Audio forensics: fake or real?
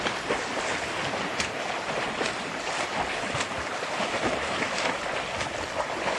real